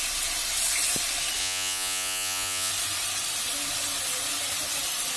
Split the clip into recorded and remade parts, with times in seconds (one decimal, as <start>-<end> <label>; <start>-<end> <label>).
0.0-1.4 recorded; 1.4-2.7 remade; 2.7-5.2 recorded